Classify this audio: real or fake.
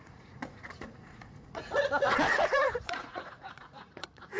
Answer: fake